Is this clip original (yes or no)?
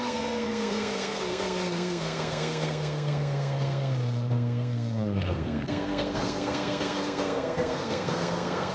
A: no